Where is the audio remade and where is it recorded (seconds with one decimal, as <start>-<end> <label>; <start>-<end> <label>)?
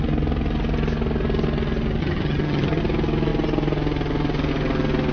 0.0-2.0 recorded; 2.0-2.8 remade; 2.8-5.1 recorded